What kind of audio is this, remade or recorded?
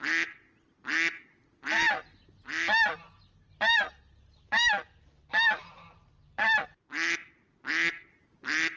recorded